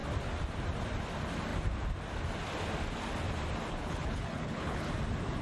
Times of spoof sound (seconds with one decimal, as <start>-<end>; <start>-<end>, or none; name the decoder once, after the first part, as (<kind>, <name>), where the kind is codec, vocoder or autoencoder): 3.7-4.9 (codec, HILCodec)